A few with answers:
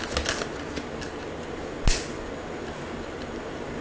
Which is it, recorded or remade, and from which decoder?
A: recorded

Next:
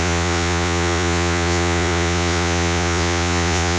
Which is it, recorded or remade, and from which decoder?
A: remade, vocoder, Vocos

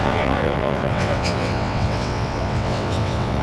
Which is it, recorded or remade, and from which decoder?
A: remade, vocoder, WaveNeXt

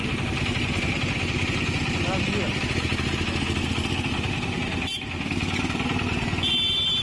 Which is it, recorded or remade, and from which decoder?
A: recorded